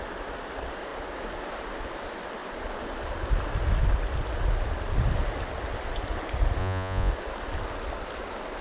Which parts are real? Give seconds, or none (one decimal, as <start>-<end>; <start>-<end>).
0.0-6.6; 7.1-8.6